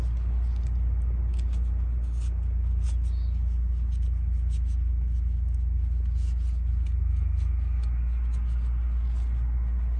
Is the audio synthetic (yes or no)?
no